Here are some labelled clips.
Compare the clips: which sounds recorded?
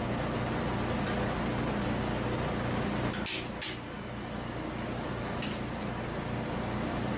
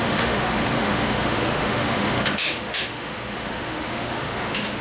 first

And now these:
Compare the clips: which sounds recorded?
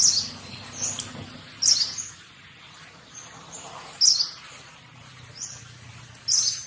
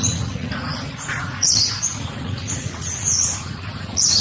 first